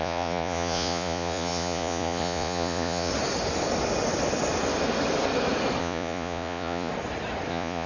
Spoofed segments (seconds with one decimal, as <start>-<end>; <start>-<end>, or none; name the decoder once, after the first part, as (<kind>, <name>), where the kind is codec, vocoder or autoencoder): 0.0-3.1 (vocoder, Vocos); 5.8-6.9; 7.5-7.9